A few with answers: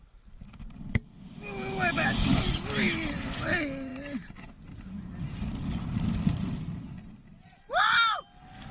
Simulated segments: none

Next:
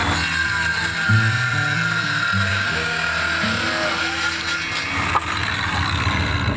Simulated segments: 2.5-3.1

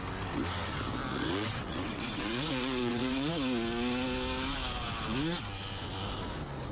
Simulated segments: 1.1-3.3

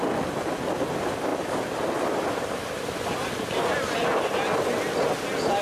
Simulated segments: none

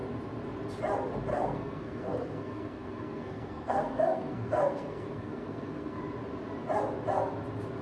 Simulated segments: 1.3-6.0

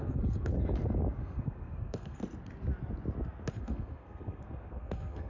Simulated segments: 0.0-0.5; 1.2-2.2; 3.5-5.3